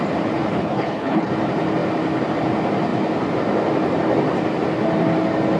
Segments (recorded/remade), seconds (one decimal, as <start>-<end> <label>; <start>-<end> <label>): 0.0-0.5 recorded; 0.5-1.3 remade; 1.3-5.6 recorded